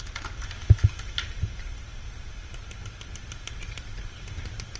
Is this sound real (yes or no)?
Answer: yes